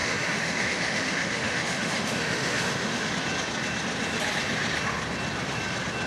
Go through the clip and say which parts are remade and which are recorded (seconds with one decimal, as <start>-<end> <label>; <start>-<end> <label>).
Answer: 0.0-3.1 remade; 3.1-6.1 recorded